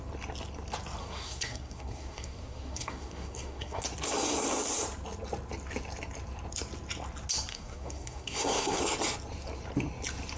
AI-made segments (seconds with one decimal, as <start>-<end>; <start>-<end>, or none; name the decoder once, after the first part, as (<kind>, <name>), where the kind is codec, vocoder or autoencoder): 1.0-3.8 (codec, SNAC); 7.5-8.8